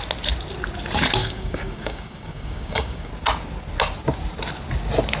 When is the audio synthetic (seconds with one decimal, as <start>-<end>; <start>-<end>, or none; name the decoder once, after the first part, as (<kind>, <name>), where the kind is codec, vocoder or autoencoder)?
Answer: 1.2-3.1 (codec, DAC)